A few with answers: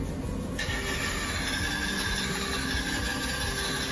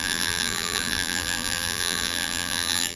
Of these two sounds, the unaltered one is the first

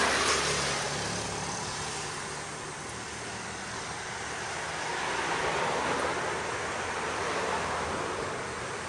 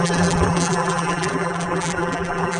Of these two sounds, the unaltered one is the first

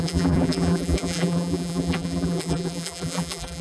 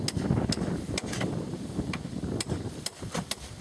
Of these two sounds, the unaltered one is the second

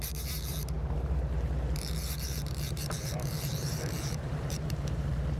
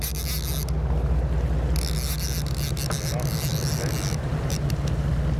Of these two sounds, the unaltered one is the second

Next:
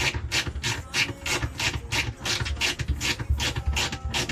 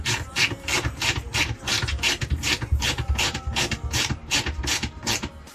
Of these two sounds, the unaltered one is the first